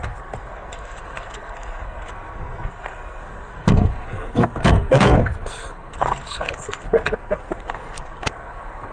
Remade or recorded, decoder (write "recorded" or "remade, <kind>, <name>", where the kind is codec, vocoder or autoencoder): remade, codec, SNAC